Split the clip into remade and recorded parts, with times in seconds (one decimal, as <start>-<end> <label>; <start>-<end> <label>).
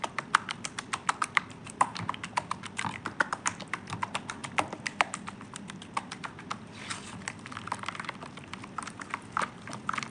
0.0-10.1 remade